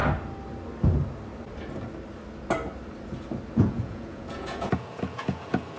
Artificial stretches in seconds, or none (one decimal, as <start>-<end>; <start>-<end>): 3.5-5.8